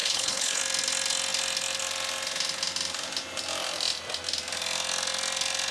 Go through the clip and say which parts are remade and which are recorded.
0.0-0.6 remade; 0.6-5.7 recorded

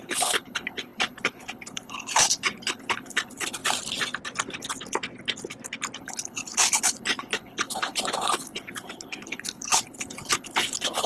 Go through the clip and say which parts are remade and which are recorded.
0.0-3.6 remade; 3.6-6.0 recorded; 6.0-11.1 remade

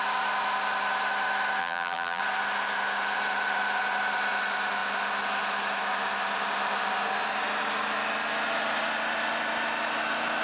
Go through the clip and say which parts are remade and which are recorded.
0.0-1.6 recorded; 1.6-2.2 remade; 2.2-10.4 recorded

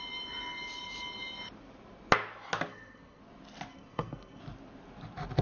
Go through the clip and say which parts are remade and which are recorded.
0.0-2.7 recorded; 2.7-3.2 remade; 3.2-3.7 recorded; 3.7-4.4 remade; 4.4-5.4 recorded

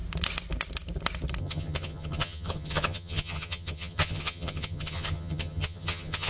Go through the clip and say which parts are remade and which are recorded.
0.0-1.4 recorded; 1.4-6.3 remade